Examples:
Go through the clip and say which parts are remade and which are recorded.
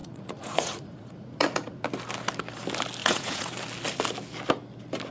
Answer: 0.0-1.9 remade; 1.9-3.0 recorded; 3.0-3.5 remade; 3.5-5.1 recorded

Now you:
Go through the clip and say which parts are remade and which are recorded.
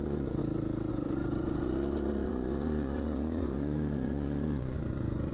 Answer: 0.0-0.4 remade; 0.4-0.9 recorded; 0.9-5.3 remade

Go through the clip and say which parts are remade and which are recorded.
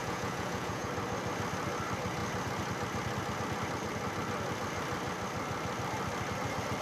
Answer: 0.0-0.9 remade; 0.9-6.8 recorded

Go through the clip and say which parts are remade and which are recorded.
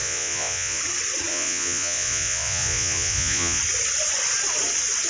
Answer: 0.0-0.8 remade; 0.8-1.3 recorded; 1.3-3.6 remade; 3.6-5.1 recorded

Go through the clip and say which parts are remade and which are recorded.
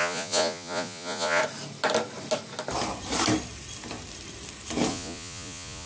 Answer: 0.0-1.4 remade; 1.4-4.9 recorded; 4.9-5.9 remade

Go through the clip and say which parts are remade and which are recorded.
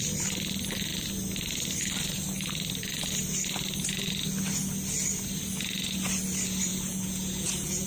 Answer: 0.0-6.7 recorded; 6.7-7.9 remade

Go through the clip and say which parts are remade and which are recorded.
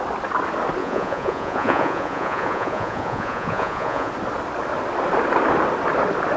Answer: 0.0-0.8 recorded; 0.8-4.1 remade; 4.1-6.4 recorded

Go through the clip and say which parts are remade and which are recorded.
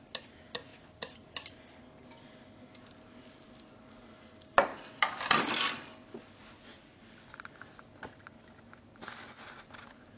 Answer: 0.0-10.2 recorded